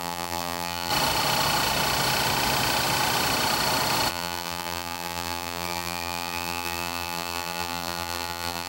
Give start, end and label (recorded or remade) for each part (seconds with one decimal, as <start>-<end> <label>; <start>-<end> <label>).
0.0-0.9 remade; 0.9-4.1 recorded; 4.1-8.7 remade